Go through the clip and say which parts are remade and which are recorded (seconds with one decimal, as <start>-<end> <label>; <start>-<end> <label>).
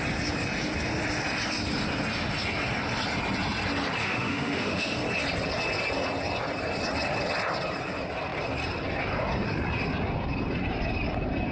0.0-4.0 recorded; 4.0-5.0 remade; 5.0-11.5 recorded